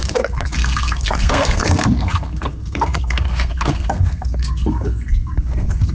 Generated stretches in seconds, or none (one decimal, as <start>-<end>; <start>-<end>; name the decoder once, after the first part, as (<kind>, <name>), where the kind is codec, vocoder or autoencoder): 0.0-5.9 (codec, SNAC)